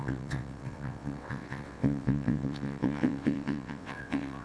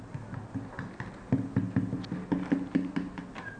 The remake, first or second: first